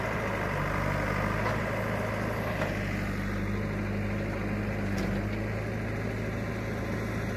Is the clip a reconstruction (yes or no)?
no